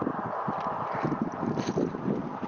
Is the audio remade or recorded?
recorded